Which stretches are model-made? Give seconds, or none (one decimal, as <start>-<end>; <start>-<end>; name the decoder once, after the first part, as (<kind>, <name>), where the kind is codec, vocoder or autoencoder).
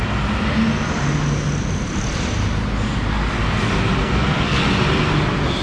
4.0-4.6 (codec, SNAC)